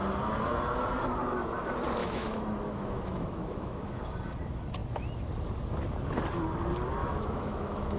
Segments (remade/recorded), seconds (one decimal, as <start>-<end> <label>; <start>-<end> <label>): 0.0-2.0 recorded; 2.0-4.0 remade; 4.0-7.0 recorded; 7.0-8.0 remade